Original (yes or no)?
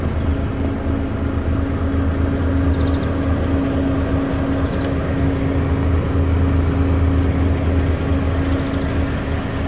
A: yes